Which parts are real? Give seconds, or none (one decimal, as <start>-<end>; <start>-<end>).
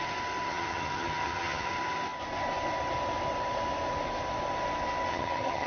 0.0-0.5; 1.7-5.1